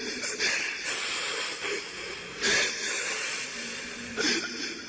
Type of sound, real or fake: real